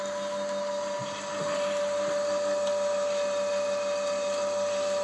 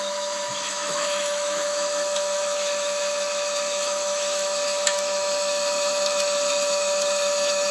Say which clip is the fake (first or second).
second